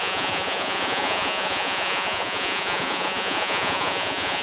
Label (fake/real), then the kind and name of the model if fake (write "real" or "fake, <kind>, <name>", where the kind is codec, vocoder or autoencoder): fake, vocoder, Vocos